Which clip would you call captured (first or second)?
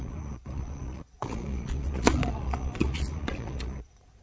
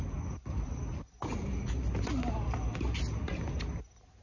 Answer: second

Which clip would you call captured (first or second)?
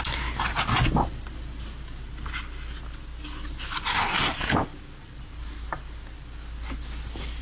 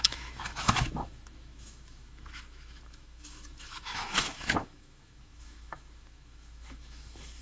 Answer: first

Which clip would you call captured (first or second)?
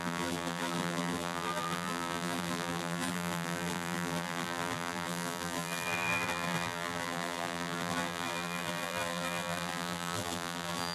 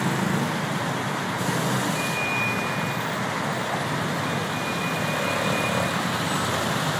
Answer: second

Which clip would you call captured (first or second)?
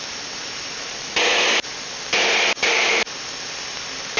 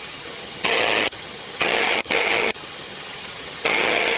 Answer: first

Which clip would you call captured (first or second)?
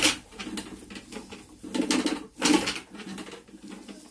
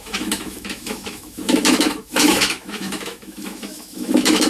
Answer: first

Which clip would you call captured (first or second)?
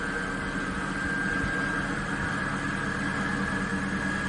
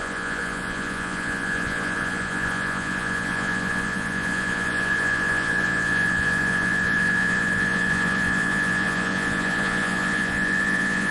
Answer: first